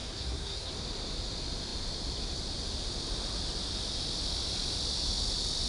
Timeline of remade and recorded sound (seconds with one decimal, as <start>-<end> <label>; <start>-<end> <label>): 0.0-0.7 remade; 0.7-5.7 recorded